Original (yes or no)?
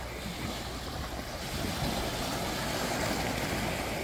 yes